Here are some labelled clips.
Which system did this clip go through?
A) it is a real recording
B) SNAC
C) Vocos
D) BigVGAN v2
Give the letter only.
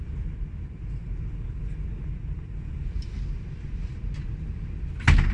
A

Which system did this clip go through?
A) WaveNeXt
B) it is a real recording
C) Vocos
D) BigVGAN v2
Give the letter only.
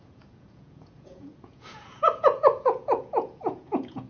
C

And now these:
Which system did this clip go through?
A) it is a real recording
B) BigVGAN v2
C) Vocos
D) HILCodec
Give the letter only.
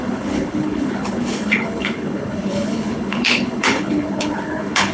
D